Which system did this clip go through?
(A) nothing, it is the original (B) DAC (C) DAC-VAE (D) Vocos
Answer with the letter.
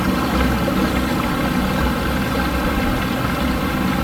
A